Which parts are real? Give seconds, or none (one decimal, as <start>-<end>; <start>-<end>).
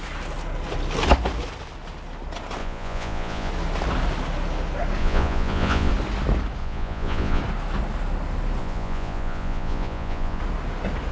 0.0-2.6; 3.5-5.0; 5.9-6.6; 7.4-8.6; 10.4-11.1